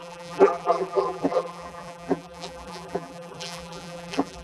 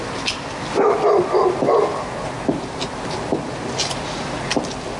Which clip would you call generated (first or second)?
first